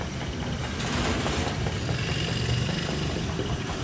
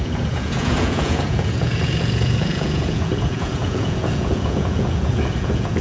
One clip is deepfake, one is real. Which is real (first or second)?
first